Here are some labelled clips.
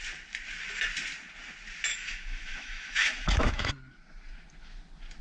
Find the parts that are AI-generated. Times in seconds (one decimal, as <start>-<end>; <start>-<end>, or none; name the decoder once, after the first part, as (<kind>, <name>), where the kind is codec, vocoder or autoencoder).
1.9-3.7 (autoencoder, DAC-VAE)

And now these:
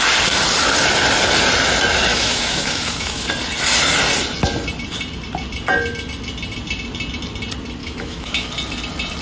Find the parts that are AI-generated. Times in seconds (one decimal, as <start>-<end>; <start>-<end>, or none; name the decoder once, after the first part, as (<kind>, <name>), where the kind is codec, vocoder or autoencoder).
2.1-3.3 (autoencoder, DAC-VAE); 7.8-8.5

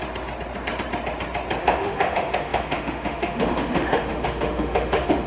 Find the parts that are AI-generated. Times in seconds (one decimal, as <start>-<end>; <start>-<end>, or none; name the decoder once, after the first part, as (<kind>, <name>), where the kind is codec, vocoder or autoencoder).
1.6-5.3 (autoencoder, DAC-VAE)